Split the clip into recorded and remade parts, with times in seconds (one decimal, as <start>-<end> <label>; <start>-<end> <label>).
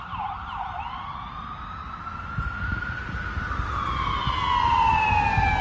0.0-5.6 recorded